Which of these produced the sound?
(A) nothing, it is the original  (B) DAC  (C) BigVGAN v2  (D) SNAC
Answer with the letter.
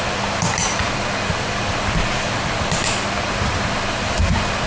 A